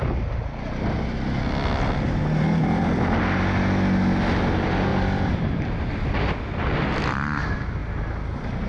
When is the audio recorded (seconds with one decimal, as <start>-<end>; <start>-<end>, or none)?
0.0-4.9; 6.2-8.7